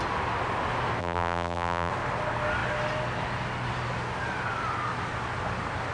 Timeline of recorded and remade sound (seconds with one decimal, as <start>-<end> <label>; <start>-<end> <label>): 0.0-1.0 recorded; 1.0-1.9 remade; 1.9-5.9 recorded